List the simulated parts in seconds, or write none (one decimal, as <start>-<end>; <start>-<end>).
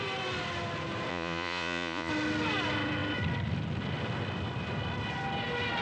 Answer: 1.1-2.1